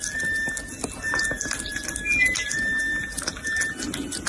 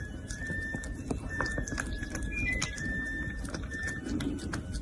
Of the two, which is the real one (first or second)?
first